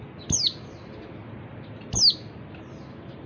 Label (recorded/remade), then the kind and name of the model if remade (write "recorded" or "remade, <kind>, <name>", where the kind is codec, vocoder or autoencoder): recorded